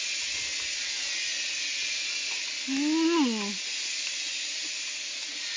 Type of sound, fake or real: real